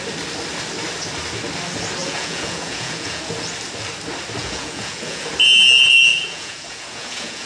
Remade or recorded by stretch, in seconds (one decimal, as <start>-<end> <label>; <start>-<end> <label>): 0.0-2.0 recorded; 2.0-3.2 remade; 3.2-4.4 recorded; 4.4-5.3 remade; 5.3-6.1 recorded; 6.1-7.5 remade